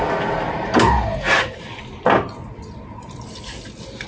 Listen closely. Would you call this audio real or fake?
real